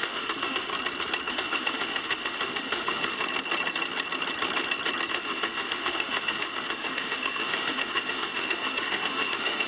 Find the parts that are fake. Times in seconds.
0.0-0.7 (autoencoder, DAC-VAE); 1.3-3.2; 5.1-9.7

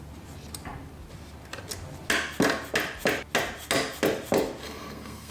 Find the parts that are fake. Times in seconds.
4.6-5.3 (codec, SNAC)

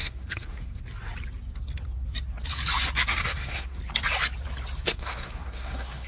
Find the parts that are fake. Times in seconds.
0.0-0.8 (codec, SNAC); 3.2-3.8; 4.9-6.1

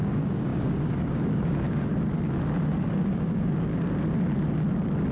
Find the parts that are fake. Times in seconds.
0.0-1.9 (codec, DAC); 2.7-3.7

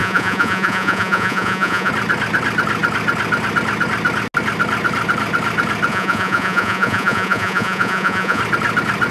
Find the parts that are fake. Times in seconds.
0.0-1.9 (vocoder, Vocos); 5.9-8.4

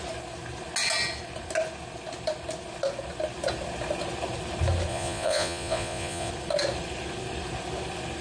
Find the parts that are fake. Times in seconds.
4.9-6.3 (vocoder, Vocos)

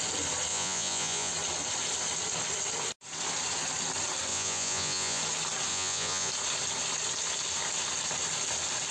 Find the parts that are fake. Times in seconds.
0.5-1.3 (vocoder, Vocos); 4.3-5.2; 5.7-6.3